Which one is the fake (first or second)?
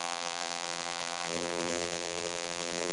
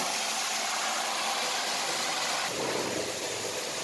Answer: first